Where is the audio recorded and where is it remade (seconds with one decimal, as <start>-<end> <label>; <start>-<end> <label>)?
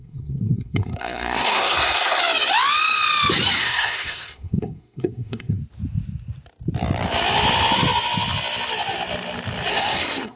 0.0-2.2 remade; 2.2-3.6 recorded; 3.6-5.6 remade; 5.6-9.7 recorded; 9.7-10.4 remade